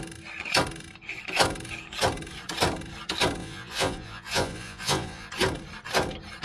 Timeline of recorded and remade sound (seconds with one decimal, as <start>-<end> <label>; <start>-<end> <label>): 0.0-3.4 recorded; 3.4-5.3 remade; 5.3-6.4 recorded